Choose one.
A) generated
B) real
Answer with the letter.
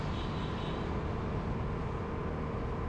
B